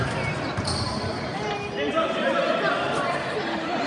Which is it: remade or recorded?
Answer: remade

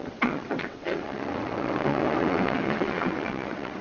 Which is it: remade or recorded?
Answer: remade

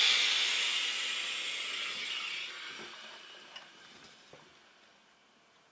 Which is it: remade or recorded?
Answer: recorded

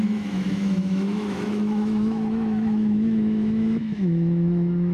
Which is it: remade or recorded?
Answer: remade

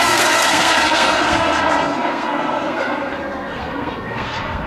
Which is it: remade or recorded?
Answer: remade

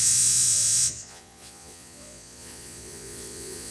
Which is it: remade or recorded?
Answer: remade